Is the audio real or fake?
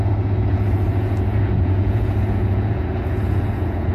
fake